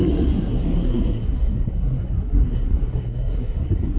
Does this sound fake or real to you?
fake